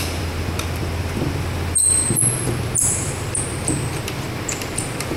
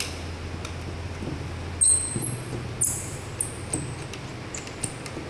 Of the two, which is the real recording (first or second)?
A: second